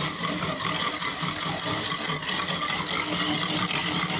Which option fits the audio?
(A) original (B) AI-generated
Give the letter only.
A